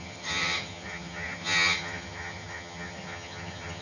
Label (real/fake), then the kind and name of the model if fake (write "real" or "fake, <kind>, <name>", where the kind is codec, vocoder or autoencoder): fake, vocoder, HiFi-GAN